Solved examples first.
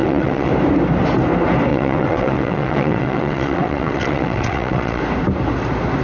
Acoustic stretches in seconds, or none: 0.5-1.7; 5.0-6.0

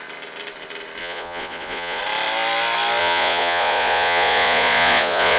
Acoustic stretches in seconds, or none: 0.0-1.0; 2.0-3.0

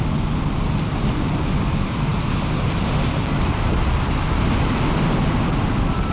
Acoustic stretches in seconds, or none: 0.0-6.1